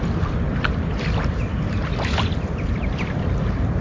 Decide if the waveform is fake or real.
fake